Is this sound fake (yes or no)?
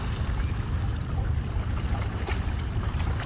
no